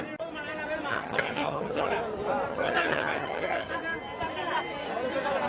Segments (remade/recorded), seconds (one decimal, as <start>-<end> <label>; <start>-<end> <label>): 0.0-0.9 recorded; 0.9-1.9 remade; 1.9-2.5 recorded; 2.5-3.7 remade; 3.7-5.5 recorded